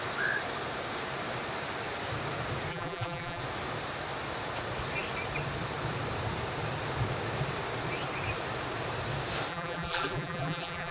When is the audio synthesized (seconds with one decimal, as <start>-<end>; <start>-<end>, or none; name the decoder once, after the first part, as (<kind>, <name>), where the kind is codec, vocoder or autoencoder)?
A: 2.7-3.4 (vocoder, BigVGAN v2); 9.5-10.9